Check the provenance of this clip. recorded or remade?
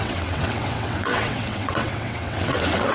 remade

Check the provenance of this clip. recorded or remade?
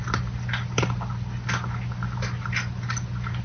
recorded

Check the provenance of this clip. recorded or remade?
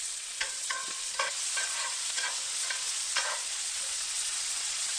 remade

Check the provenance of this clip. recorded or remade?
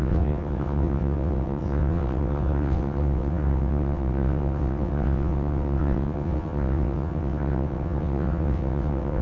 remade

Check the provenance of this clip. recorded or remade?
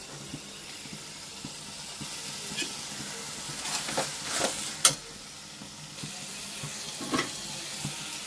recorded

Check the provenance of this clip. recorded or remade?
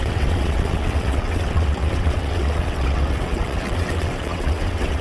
remade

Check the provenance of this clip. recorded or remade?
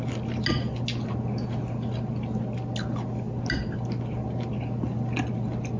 recorded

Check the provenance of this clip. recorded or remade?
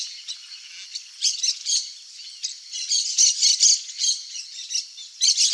recorded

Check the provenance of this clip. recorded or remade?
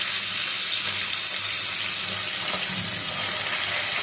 recorded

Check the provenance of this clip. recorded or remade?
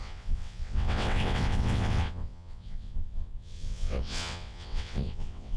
remade